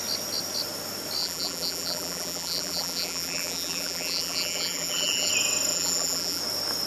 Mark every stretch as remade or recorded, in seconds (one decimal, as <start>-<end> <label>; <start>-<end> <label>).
0.0-1.2 recorded; 1.2-5.3 remade; 5.3-5.7 recorded; 5.7-6.4 remade; 6.4-6.9 recorded